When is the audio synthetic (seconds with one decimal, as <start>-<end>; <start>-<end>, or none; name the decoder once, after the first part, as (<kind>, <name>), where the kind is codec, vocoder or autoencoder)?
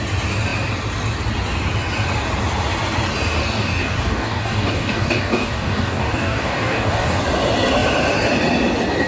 3.4-7.2 (codec, DAC)